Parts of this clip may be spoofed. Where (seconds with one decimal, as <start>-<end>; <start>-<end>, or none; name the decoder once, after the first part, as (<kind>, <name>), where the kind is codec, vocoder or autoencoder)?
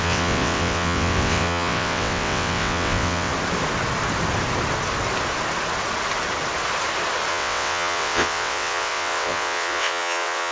0.0-3.3 (vocoder, WaveNeXt); 7.3-10.5